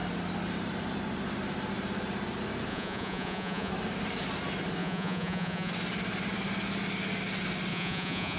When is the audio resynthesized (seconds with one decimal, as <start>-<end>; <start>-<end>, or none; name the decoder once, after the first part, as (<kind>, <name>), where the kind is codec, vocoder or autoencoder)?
2.7-3.7 (vocoder, Vocos); 4.8-5.7; 7.7-8.4